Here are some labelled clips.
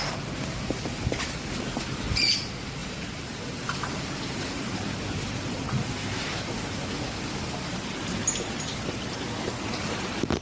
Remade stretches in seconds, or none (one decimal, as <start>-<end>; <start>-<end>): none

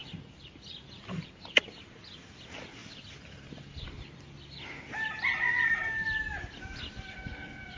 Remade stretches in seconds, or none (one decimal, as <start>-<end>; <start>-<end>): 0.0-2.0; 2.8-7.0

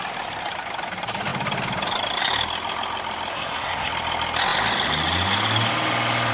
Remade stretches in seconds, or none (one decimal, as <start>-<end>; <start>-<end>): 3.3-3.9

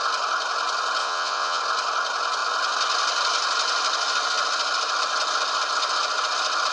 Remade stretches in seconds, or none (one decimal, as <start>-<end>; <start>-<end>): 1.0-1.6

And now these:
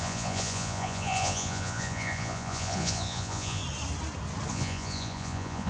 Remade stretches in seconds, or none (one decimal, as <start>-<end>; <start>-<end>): 0.0-3.6; 4.5-5.7